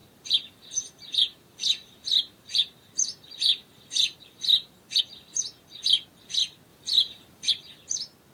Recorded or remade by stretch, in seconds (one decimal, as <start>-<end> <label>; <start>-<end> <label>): 0.0-5.0 remade; 5.0-6.7 recorded; 6.7-7.5 remade; 7.5-8.3 recorded